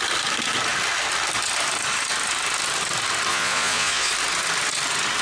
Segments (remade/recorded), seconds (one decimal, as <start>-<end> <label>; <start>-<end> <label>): 0.0-3.3 recorded; 3.3-4.1 remade; 4.1-5.2 recorded